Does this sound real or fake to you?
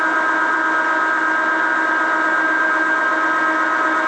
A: real